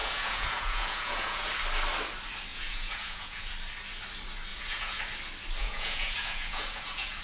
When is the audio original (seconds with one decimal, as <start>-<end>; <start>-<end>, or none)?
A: 1.5-2.5; 3.5-4.5; 5.0-5.6